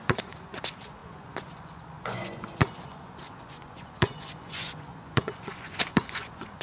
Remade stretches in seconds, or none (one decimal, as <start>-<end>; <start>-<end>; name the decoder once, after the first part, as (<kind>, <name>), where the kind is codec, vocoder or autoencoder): 0.0-6.6 (vocoder, Vocos)